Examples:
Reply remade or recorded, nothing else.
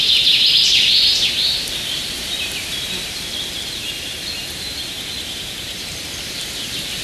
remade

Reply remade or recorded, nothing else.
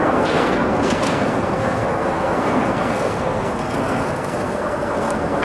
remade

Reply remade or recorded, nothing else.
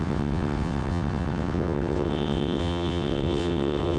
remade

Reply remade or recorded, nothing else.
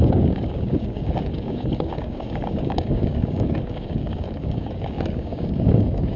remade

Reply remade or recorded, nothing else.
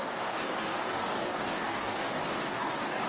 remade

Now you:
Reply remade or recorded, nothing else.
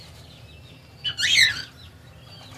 recorded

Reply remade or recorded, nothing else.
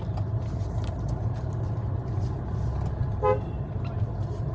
recorded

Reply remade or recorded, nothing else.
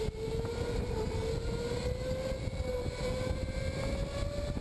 recorded